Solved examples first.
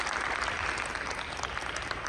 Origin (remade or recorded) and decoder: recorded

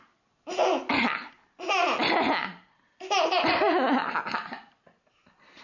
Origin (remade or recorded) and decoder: recorded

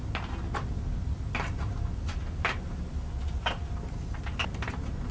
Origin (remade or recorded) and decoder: recorded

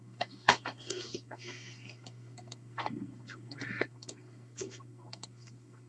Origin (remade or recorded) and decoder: remade, codec, SNAC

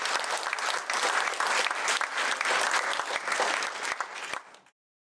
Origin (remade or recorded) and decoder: recorded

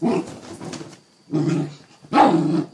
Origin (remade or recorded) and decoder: recorded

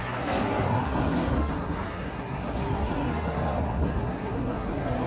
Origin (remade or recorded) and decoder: remade, codec, SNAC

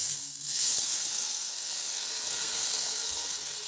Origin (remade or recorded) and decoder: remade, codec, SNAC